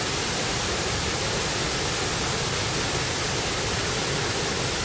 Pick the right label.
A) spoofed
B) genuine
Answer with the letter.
B